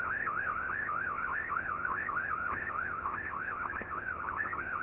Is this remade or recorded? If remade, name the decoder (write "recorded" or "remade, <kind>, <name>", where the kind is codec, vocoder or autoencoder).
remade, codec, ZipCodec